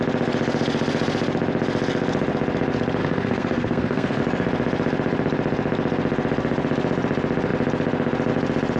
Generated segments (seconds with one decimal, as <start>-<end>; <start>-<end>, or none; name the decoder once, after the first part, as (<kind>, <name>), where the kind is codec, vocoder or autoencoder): 3.0-4.2 (codec, SNAC)